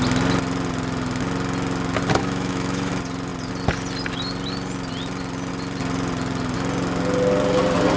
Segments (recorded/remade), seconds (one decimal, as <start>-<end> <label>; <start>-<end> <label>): 0.0-2.2 recorded; 2.2-2.9 remade; 2.9-8.0 recorded